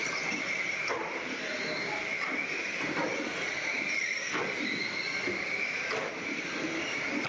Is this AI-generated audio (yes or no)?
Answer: no